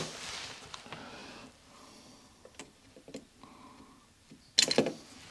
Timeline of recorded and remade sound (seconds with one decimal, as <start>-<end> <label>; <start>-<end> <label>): 0.0-5.3 recorded